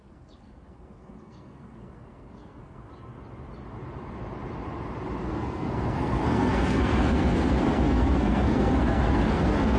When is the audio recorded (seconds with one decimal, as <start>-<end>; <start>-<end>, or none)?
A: 2.9-5.2